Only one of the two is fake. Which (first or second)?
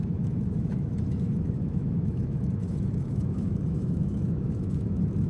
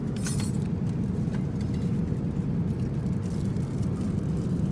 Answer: first